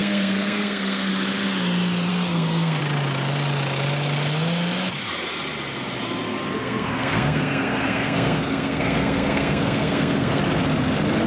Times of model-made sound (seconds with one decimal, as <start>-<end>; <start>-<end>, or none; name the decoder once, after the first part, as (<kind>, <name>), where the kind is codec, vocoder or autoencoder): 0.0-1.1 (codec, SNAC); 2.1-2.8; 6.6-10.4